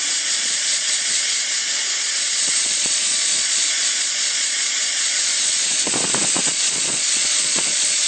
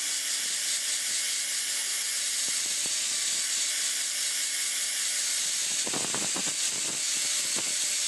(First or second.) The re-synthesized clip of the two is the first